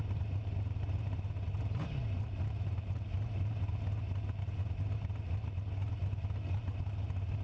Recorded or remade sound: recorded